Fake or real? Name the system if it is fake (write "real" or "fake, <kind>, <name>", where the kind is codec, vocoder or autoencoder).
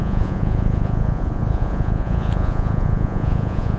fake, vocoder, Vocos